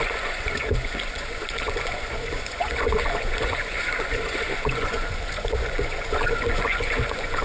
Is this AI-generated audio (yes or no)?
yes